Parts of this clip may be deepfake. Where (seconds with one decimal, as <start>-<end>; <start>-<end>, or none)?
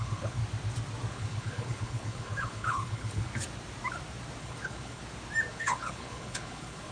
0.0-0.4; 1.1-3.3; 4.4-5.0; 5.5-6.9